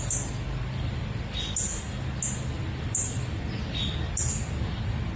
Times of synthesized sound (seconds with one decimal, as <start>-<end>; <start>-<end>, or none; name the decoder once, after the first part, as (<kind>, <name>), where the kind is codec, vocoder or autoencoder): none